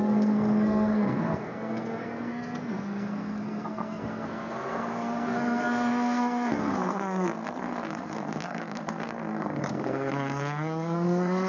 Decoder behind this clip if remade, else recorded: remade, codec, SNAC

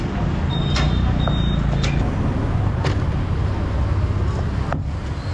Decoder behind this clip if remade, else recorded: recorded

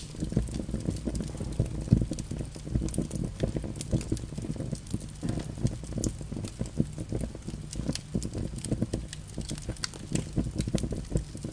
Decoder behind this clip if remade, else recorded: recorded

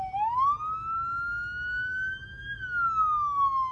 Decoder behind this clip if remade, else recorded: recorded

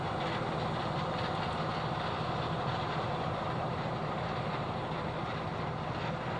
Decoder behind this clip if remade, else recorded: recorded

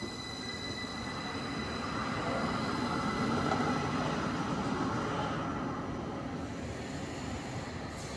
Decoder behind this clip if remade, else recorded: recorded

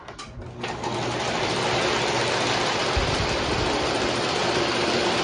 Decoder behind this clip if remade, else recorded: recorded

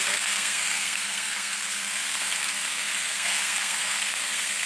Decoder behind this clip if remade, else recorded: remade, codec, SNAC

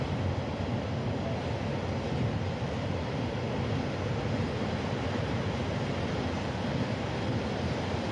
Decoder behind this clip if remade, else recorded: recorded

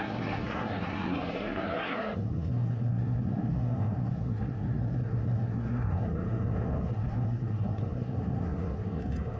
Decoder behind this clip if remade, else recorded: remade, codec, SNAC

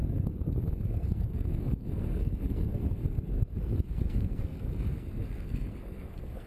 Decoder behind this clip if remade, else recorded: remade, codec, SNAC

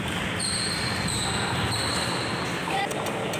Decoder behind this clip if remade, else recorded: recorded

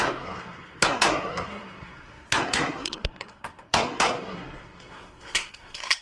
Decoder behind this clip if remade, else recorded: remade, codec, SNAC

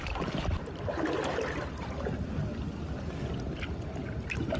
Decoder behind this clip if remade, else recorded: recorded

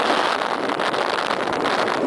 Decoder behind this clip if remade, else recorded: recorded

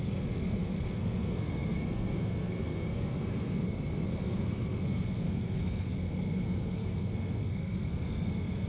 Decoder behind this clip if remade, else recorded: remade, codec, SNAC